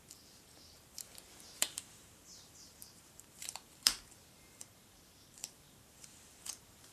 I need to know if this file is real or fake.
fake